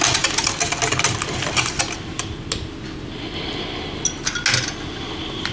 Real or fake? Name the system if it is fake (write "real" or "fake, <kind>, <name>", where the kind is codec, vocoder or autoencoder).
real